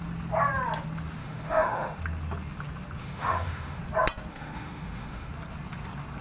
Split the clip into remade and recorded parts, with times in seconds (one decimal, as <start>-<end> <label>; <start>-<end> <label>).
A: 0.0-1.2 recorded; 1.2-2.0 remade; 2.0-3.0 recorded; 3.0-3.8 remade; 3.8-4.3 recorded; 4.3-5.3 remade; 5.3-6.2 recorded